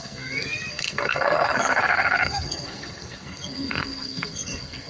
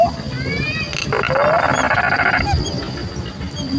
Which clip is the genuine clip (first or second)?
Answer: second